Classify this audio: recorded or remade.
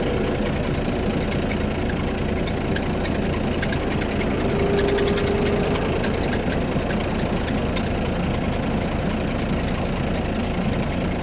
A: recorded